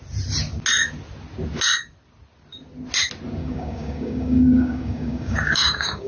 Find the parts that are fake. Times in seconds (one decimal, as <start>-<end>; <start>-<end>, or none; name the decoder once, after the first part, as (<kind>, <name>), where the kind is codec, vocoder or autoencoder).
3.4-6.1 (codec, DAC)